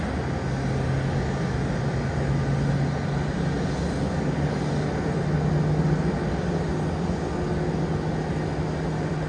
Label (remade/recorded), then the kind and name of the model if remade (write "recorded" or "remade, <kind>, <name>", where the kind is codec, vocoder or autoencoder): recorded